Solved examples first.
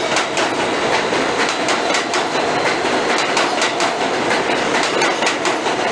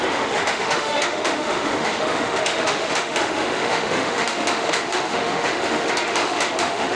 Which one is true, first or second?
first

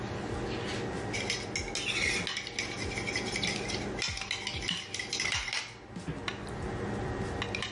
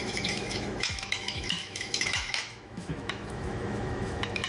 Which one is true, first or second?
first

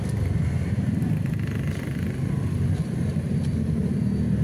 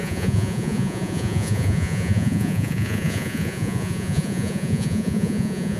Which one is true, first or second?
first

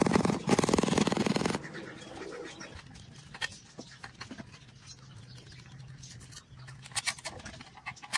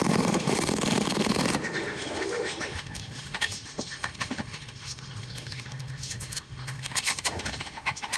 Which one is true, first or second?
first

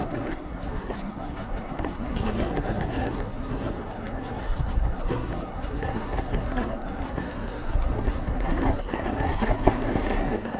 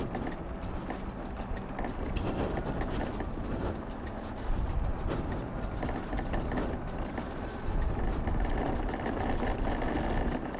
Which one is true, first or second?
second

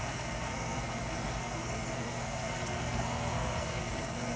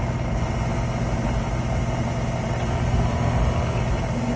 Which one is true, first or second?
second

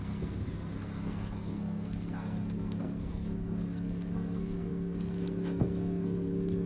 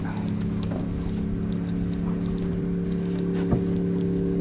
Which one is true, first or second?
second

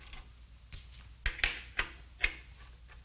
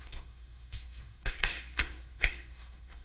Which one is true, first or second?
first